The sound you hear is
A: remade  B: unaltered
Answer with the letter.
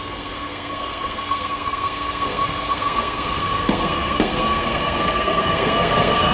A